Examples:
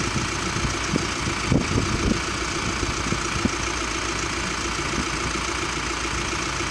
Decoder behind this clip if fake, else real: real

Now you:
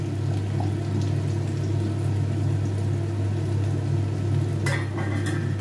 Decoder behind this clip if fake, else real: real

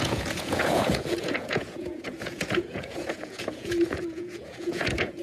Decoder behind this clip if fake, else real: fake, vocoder, Vocos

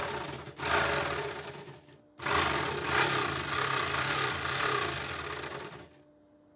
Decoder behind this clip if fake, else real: real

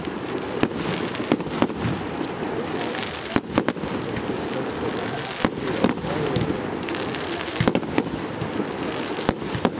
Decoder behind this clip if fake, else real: real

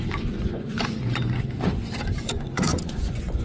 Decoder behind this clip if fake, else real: fake, vocoder, Vocos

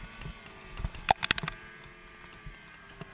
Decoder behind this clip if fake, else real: real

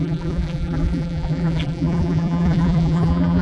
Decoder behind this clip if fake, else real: fake, vocoder, BigVGAN v2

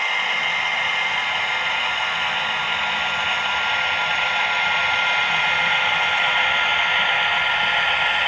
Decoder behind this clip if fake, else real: real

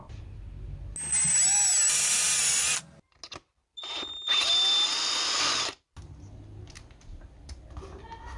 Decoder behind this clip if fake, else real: real